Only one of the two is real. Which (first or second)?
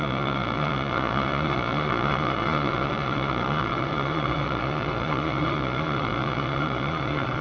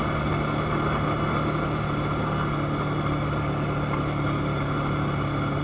second